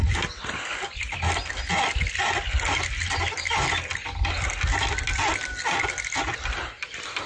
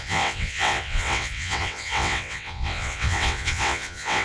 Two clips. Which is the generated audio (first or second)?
second